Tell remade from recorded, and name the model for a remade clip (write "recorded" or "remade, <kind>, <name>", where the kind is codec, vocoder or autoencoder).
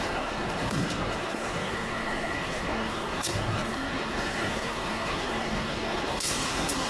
remade, codec, SNAC